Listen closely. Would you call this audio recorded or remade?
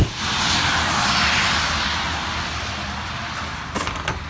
recorded